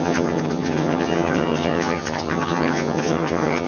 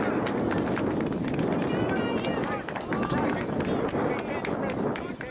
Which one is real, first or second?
second